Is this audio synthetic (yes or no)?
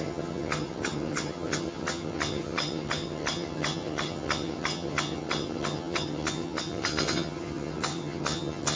yes